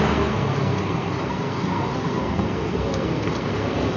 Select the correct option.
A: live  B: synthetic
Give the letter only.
B